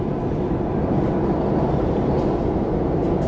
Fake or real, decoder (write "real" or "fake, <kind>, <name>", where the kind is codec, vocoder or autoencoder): real